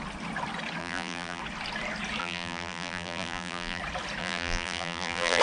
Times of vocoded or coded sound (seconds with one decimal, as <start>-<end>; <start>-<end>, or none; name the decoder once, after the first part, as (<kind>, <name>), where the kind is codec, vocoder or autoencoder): 0.8-1.4 (vocoder, BigVGAN v2); 2.2-3.8; 4.2-5.4